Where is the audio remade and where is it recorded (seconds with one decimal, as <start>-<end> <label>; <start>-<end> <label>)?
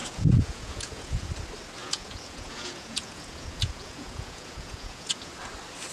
0.0-1.3 remade; 1.3-1.8 recorded; 1.8-5.3 remade; 5.3-5.9 recorded